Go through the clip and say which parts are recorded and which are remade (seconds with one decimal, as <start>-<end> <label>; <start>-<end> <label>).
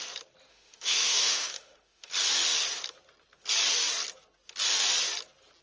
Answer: 0.0-0.5 recorded; 0.5-2.1 remade; 2.1-5.6 recorded